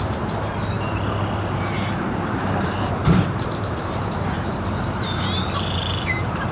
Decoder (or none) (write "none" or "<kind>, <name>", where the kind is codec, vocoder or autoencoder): vocoder, BigVGAN v2